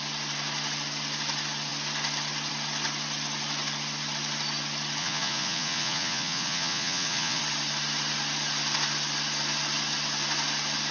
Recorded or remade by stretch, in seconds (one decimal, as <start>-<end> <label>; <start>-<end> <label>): 0.0-5.0 recorded; 5.0-7.4 remade; 7.4-10.9 recorded